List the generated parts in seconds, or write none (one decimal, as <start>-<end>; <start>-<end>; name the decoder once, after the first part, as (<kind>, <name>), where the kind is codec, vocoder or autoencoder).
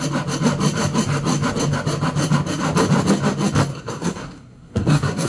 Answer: 3.7-5.3 (codec, SNAC)